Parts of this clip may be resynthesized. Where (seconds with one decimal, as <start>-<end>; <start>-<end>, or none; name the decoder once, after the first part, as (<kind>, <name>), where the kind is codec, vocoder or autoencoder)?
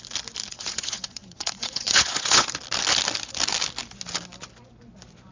0.5-2.6 (vocoder, Vocos)